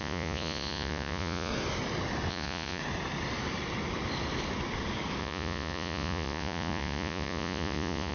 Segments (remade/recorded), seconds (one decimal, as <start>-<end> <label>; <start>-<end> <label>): 0.0-1.5 remade; 1.5-2.3 recorded; 2.3-2.8 remade; 2.8-5.2 recorded; 5.2-8.1 remade